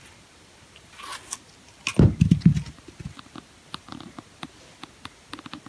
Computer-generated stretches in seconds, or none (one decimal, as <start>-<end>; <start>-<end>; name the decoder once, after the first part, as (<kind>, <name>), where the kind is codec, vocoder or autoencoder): none